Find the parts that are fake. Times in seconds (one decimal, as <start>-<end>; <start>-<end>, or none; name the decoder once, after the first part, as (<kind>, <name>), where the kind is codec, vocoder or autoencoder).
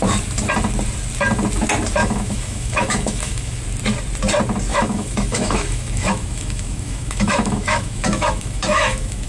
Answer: 2.0-3.6 (autoencoder, DAC-VAE); 4.7-9.3